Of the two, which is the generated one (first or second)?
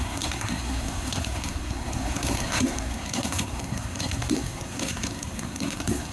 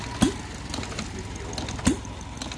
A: first